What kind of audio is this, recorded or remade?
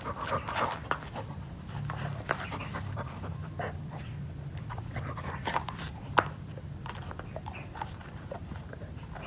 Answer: remade